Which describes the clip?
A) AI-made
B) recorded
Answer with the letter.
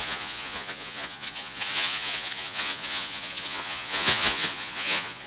A